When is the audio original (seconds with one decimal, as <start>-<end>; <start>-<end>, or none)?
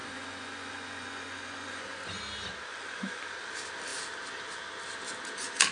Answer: 2.2-2.7; 3.2-5.7